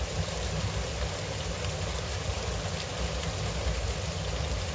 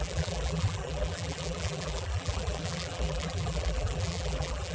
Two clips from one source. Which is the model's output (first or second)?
second